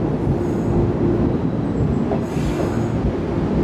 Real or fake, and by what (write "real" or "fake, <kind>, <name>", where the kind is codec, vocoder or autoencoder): real